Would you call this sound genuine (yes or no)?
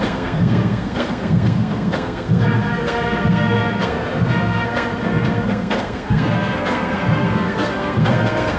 no